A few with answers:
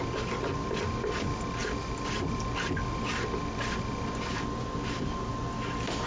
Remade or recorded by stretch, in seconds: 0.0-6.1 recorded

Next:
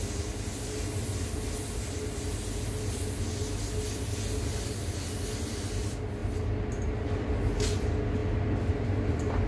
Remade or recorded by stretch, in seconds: 0.0-9.5 recorded

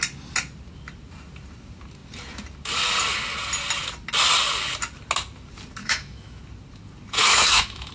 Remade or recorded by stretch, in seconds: 0.0-5.8 recorded; 5.8-6.4 remade; 6.4-7.2 recorded; 7.2-7.9 remade

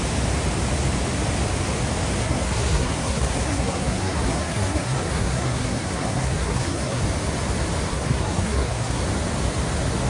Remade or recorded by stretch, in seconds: 0.0-2.2 recorded; 2.2-7.0 remade; 7.0-7.9 recorded; 7.9-9.0 remade; 9.0-10.1 recorded